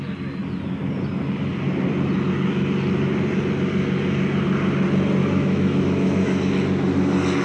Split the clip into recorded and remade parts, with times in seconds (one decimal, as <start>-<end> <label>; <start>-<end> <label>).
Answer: 0.0-5.2 recorded; 5.2-6.5 remade; 6.5-7.4 recorded